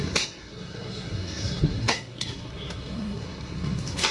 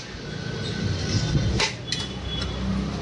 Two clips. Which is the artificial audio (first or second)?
first